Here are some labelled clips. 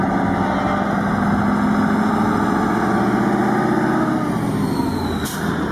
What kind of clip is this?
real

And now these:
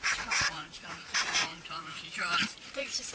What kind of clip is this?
fake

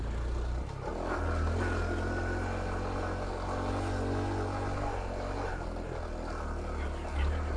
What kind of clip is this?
real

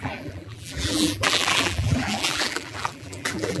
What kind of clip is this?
fake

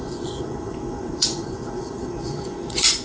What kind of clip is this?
fake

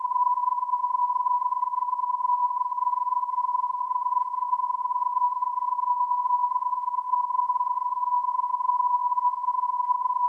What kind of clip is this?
fake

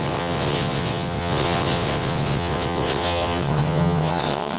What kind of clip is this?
fake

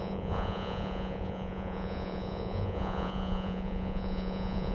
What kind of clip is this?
fake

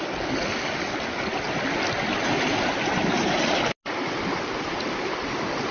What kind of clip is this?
real